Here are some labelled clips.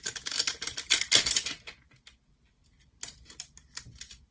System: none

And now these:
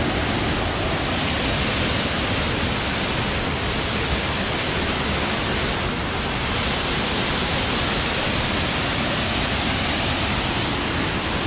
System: none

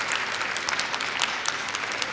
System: none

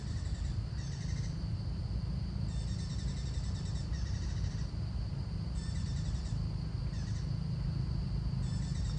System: none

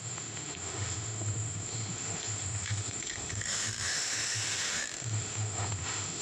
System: autoencoder, DAC-VAE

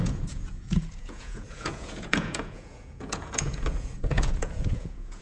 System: vocoder, Vocos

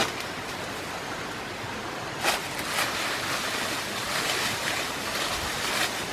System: none